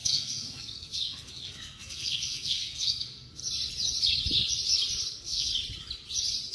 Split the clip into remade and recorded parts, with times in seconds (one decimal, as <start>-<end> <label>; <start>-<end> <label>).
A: 0.0-3.4 remade; 3.4-5.1 recorded; 5.1-5.5 remade; 5.5-6.5 recorded